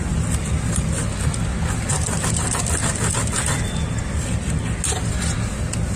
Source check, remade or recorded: recorded